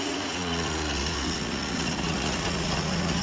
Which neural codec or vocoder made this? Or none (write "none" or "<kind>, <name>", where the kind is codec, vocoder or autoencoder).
vocoder, Vocos